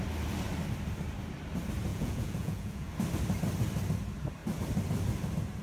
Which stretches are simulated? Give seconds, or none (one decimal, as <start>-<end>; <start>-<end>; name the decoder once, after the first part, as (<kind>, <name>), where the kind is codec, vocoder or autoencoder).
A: 1.9-2.9 (vocoder, Vocos)